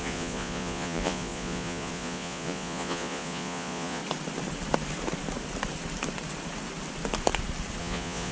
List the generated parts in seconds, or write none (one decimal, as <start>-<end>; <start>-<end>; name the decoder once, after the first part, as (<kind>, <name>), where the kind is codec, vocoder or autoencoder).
0.0-4.0 (vocoder, Vocos); 7.8-8.3